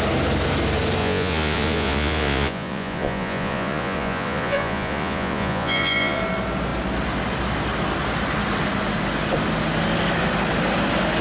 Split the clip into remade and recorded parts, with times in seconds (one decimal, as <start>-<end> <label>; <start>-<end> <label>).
0.0-1.0 recorded; 1.0-6.2 remade; 6.2-11.2 recorded